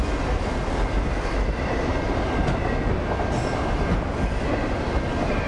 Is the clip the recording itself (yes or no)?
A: yes